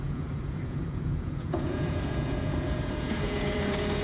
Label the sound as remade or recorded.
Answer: remade